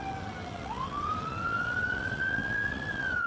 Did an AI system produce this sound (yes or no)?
yes